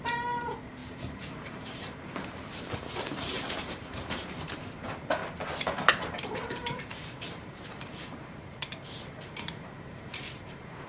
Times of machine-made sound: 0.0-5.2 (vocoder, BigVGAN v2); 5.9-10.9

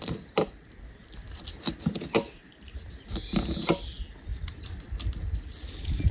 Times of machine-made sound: none

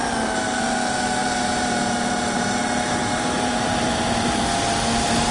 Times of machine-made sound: 1.2-4.4 (vocoder, BigVGAN v2)

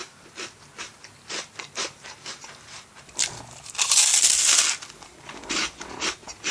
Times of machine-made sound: 0.8-4.0 (vocoder, BigVGAN v2); 5.2-6.5

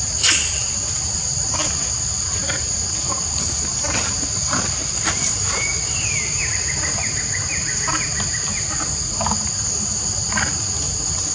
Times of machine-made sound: 4.8-7.8 (vocoder, BigVGAN v2)

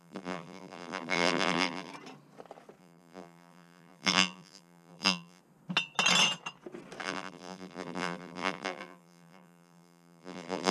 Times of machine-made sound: 0.0-1.9 (vocoder, BigVGAN v2); 2.8-5.4; 7.0-10.7

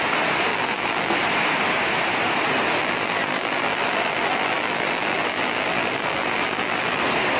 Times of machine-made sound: 0.5-1.1 (vocoder, BigVGAN v2); 2.8-7.0

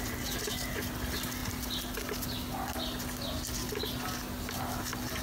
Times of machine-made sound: none